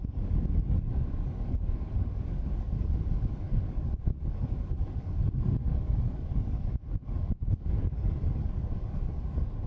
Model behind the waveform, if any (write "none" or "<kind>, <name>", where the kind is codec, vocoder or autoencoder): codec, DAC